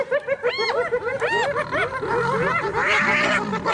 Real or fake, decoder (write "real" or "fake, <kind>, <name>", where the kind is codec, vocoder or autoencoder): real